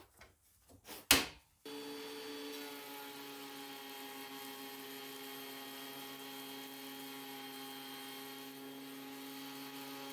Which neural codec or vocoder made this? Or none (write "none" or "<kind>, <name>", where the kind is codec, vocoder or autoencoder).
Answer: none